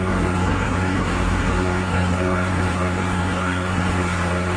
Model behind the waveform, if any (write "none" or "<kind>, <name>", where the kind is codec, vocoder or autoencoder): codec, SNAC